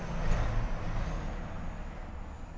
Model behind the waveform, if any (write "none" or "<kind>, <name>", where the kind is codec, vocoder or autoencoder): none